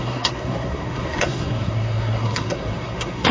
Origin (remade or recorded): remade